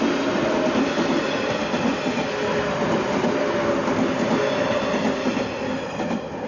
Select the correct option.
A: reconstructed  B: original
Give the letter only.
B